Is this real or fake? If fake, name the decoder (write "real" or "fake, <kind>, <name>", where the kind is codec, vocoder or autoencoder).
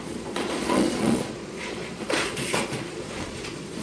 fake, vocoder, Vocos